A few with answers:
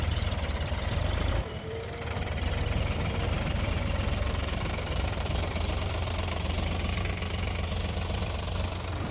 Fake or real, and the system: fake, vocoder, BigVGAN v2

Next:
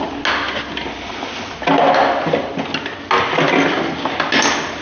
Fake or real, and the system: real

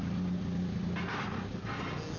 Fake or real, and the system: real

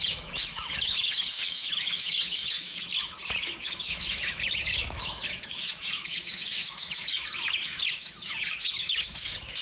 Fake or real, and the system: fake, autoencoder, DAC-VAE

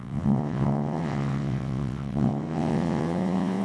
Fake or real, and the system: fake, vocoder, WaveNeXt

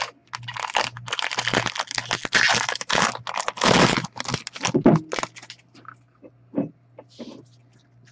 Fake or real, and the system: real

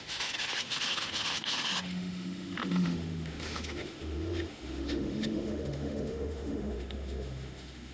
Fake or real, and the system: fake, autoencoder, DAC-VAE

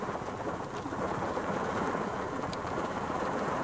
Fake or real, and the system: fake, vocoder, BigVGAN v2